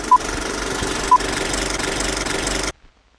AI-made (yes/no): no